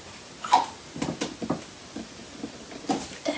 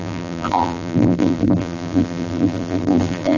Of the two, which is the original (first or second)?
first